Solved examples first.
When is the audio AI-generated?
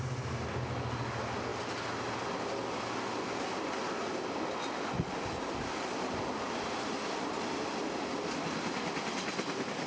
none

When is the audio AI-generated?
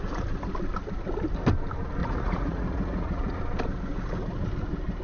2.0-3.4 (vocoder, Vocos)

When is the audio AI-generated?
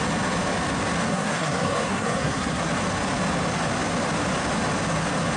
1.1-2.7 (codec, SNAC)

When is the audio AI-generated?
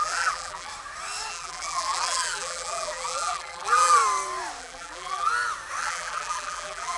0.0-0.7 (vocoder, BigVGAN v2); 1.3-4.0; 4.6-5.3; 5.8-7.0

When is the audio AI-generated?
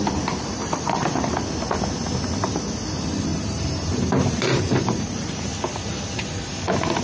3.3-5.5 (vocoder, BigVGAN v2)